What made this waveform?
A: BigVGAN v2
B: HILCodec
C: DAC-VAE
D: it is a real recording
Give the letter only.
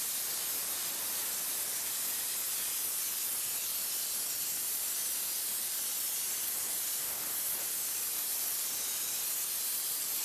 D